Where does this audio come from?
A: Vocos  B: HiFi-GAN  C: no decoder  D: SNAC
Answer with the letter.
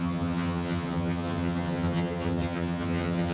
B